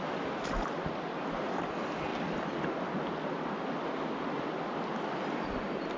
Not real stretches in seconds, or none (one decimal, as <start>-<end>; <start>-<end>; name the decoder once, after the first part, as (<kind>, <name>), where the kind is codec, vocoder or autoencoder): none